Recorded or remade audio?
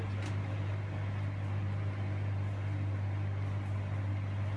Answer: recorded